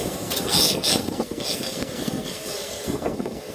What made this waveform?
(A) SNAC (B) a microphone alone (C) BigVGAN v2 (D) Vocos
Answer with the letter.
A